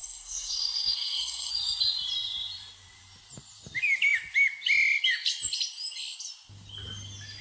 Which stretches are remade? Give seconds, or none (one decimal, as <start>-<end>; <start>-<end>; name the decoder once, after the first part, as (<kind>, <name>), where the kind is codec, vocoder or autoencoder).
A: 0.0-1.5 (codec, SNAC)